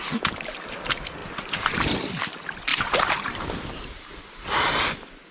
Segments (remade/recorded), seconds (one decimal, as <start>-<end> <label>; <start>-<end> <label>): 0.0-1.2 recorded; 1.2-1.8 remade; 1.8-2.7 recorded; 2.7-4.2 remade; 4.2-5.3 recorded